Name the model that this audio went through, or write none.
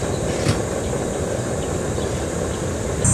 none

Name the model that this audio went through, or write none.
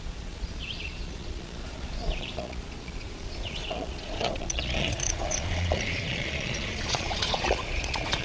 vocoder, Vocos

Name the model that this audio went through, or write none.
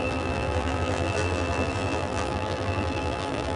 vocoder, BigVGAN v2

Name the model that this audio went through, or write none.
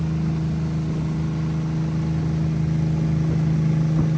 none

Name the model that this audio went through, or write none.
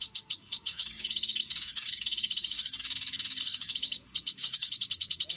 codec, DAC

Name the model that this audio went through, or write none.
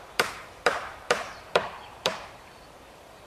vocoder, BigVGAN v2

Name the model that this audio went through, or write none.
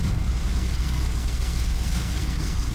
codec, SNAC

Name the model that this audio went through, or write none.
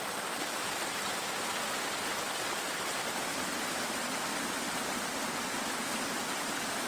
none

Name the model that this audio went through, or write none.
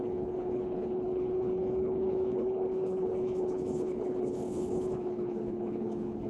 codec, HILCodec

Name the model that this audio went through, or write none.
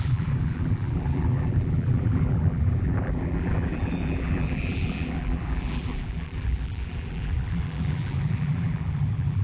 vocoder, BigVGAN v2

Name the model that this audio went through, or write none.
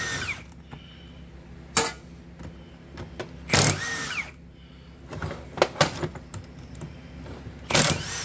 none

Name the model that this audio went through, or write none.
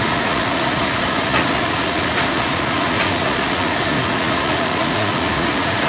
vocoder, Vocos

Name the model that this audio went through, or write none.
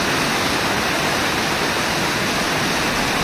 none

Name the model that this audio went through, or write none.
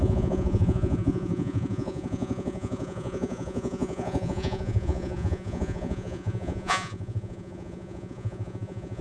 vocoder, Vocos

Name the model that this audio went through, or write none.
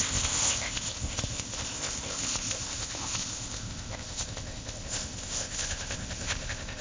codec, ZipCodec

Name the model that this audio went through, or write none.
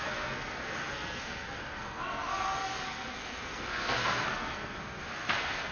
codec, SNAC